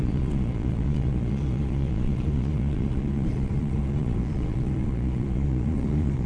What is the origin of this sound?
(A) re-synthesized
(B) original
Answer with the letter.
A